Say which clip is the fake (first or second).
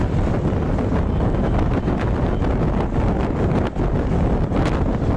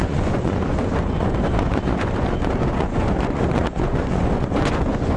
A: second